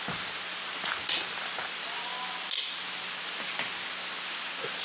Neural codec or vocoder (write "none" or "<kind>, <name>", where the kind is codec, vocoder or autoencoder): none